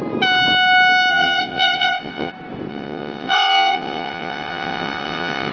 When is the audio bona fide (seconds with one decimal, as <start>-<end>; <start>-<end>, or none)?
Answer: 0.0-1.1; 2.3-2.7